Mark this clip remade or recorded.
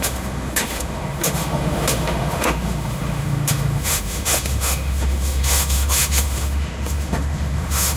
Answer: remade